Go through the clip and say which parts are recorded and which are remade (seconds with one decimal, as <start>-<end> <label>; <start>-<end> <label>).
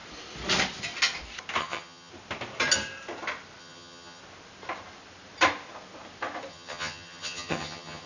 0.0-1.6 recorded; 1.6-2.1 remade; 2.1-3.6 recorded; 3.6-4.2 remade; 4.2-6.5 recorded; 6.5-8.1 remade